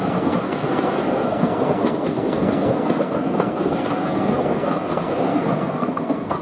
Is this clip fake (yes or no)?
yes